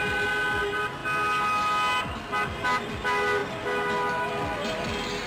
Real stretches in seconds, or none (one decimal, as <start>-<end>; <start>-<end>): 0.0-5.3